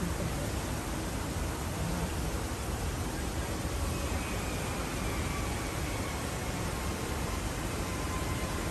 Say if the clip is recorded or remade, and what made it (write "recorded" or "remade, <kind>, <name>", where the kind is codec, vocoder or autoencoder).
remade, vocoder, BigVGAN v2